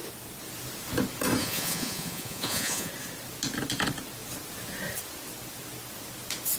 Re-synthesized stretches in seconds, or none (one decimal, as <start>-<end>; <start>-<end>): 1.4-2.9